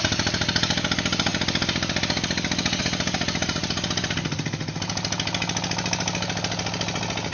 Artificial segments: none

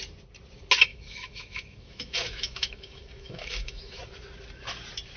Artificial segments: 0.9-4.0

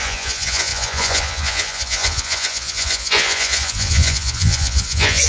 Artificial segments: 0.0-5.3

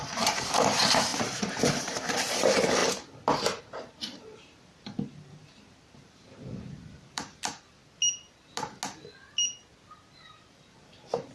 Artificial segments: 0.0-2.8; 3.6-7.8; 10.2-11.3

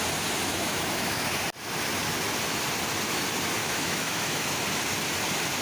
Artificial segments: 0.5-1.2; 3.6-4.6